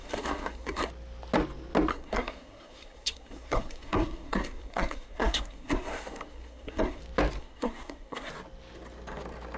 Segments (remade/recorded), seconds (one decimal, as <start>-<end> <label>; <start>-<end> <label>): 0.0-0.9 remade; 0.9-1.9 recorded; 1.9-7.0 remade; 7.0-7.4 recorded; 7.4-8.3 remade; 8.3-9.6 recorded